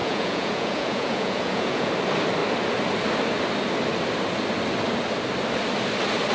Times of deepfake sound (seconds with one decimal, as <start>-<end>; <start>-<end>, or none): 0.0-1.9